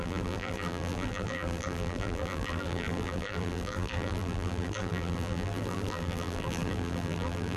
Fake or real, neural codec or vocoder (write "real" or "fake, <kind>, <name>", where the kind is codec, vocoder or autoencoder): fake, vocoder, BigVGAN v2